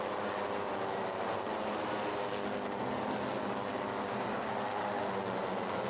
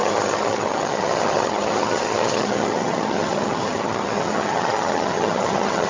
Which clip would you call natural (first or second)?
first